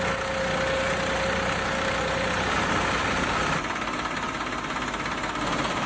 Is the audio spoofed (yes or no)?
no